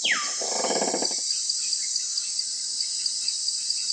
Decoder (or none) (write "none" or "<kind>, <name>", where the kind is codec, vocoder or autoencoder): none